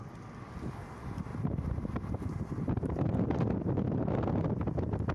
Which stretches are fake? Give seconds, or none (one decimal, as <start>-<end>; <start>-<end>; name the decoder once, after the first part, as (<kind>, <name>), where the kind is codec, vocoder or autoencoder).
1.3-3.4 (vocoder, BigVGAN v2)